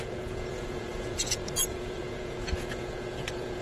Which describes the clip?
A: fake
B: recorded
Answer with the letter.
A